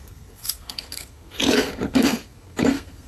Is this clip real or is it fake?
fake